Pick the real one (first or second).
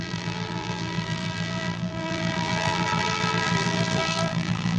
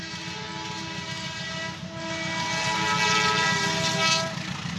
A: second